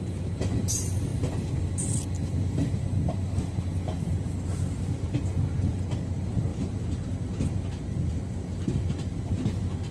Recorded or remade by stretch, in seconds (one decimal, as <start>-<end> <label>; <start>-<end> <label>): 0.0-6.5 recorded; 6.5-9.3 remade; 9.3-9.9 recorded